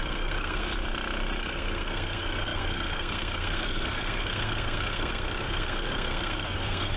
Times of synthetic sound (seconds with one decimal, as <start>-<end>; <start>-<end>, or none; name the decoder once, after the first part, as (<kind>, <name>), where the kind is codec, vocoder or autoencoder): 0.0-0.7 (codec, SNAC); 1.4-7.0

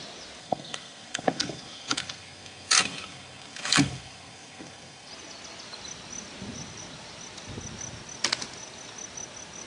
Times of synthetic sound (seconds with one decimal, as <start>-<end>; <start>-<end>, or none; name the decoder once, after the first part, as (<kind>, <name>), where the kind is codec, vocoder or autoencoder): 0.4-5.1 (codec, SNAC)

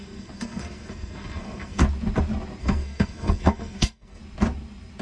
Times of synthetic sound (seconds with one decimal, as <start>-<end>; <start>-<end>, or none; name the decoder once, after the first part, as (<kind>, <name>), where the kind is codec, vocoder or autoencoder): 0.0-1.8 (codec, SNAC); 2.6-4.2

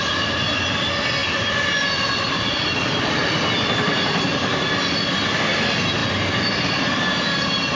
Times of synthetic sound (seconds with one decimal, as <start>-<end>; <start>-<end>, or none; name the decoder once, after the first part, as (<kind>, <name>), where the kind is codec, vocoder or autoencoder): none